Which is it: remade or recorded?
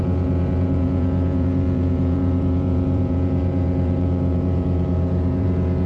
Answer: remade